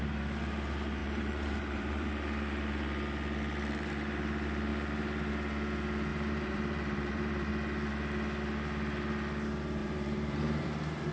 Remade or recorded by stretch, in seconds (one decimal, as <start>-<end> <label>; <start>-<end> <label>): 0.0-1.0 recorded; 1.0-2.1 remade; 2.1-6.1 recorded; 6.1-7.5 remade; 7.5-9.8 recorded; 9.8-11.1 remade

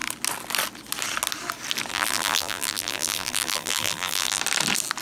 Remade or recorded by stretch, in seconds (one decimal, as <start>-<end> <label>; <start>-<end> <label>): 0.0-1.9 recorded; 1.9-4.4 remade; 4.4-5.0 recorded

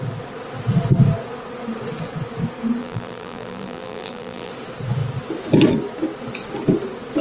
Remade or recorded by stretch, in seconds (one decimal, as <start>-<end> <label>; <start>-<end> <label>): 0.0-2.8 recorded; 2.8-4.5 remade; 4.5-7.2 recorded

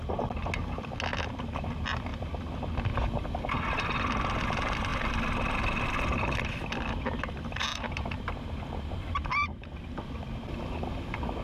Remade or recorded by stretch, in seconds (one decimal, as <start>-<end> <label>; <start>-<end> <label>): 0.0-7.7 recorded; 7.7-10.0 remade; 10.0-11.4 recorded

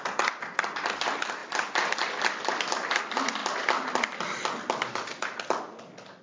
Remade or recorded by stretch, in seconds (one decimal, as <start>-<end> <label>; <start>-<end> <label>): 0.0-6.2 recorded

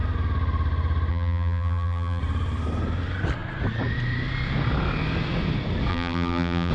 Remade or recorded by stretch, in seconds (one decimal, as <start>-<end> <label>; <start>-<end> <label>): 0.0-1.1 recorded; 1.1-2.2 remade; 2.2-5.9 recorded; 5.9-6.7 remade